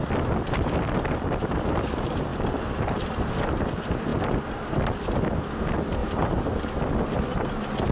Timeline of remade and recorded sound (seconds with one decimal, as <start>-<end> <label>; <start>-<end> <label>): 0.0-6.0 recorded; 6.0-6.5 remade; 6.5-7.9 recorded